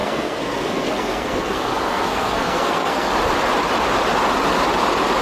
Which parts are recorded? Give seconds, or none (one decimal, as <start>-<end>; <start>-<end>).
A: 3.1-5.2